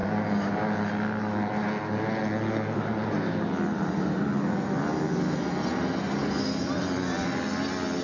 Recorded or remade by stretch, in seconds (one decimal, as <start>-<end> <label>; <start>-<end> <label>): 0.0-8.0 recorded